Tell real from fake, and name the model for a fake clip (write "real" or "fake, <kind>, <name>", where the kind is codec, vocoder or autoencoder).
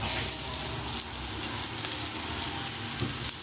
real